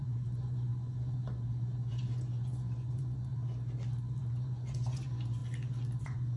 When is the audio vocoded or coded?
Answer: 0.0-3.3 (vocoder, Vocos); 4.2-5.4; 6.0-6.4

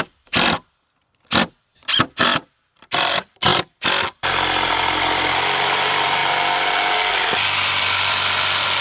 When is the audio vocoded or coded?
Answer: 0.0-8.8 (vocoder, BigVGAN v2)